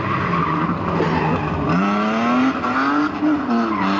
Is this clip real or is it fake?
real